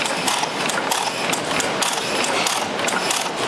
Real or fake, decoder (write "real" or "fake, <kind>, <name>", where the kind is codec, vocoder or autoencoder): real